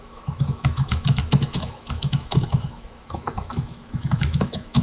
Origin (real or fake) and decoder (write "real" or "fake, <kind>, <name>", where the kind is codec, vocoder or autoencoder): fake, autoencoder, DAC-VAE